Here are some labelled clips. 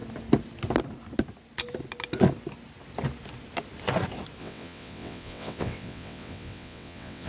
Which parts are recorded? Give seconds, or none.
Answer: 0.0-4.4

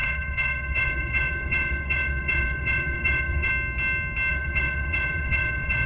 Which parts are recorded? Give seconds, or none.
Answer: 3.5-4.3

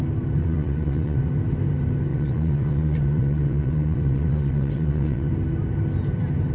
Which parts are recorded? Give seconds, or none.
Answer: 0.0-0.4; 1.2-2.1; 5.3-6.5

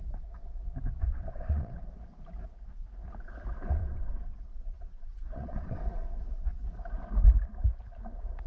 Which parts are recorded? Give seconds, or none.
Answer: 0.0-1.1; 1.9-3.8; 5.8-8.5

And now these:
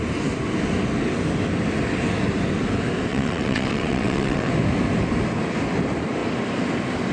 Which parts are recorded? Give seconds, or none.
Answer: 0.0-3.1; 4.5-7.1